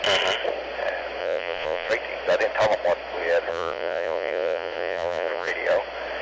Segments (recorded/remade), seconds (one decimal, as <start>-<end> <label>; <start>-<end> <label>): 0.0-1.2 recorded; 1.2-1.9 remade; 1.9-3.5 recorded; 3.5-5.5 remade; 5.5-6.2 recorded